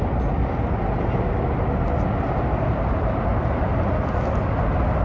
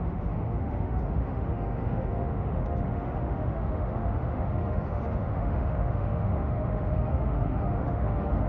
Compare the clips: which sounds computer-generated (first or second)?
second